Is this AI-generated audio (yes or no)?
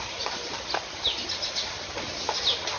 no